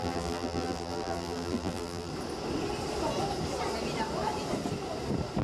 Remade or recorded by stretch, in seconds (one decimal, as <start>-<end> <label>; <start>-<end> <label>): 0.0-2.1 remade; 2.1-5.4 recorded